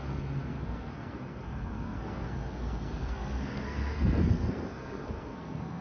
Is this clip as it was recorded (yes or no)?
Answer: no